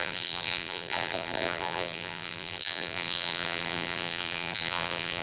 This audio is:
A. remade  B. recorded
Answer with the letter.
A